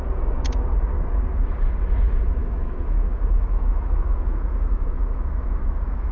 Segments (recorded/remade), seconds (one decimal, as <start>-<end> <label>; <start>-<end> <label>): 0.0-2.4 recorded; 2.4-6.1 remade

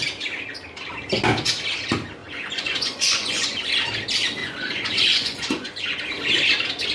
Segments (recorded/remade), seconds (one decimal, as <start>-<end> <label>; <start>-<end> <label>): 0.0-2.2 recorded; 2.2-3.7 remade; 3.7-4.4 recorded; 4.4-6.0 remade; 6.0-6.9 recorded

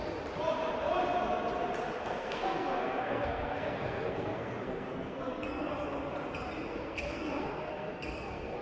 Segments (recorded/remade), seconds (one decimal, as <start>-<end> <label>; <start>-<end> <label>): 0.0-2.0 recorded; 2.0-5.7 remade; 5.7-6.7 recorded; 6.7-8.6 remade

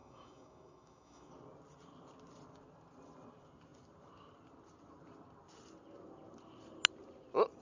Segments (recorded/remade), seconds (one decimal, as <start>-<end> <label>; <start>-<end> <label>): 0.0-1.3 remade; 1.3-7.6 recorded

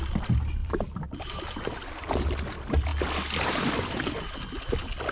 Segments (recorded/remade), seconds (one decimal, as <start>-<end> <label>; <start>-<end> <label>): 0.0-0.6 recorded; 0.6-2.5 remade; 2.5-2.9 recorded; 2.9-4.3 remade; 4.3-5.1 recorded

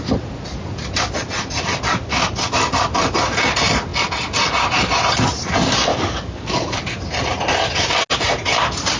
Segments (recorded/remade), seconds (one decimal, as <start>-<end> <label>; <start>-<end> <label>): 0.0-5.9 recorded; 5.9-6.8 remade; 6.8-9.0 recorded